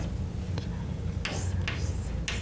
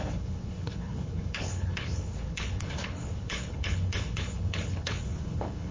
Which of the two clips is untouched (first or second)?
first